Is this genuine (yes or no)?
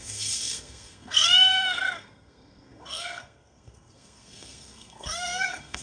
no